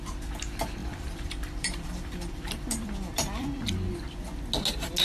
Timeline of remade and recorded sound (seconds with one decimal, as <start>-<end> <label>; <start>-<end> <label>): 0.0-0.8 recorded; 0.8-3.7 remade; 3.7-5.0 recorded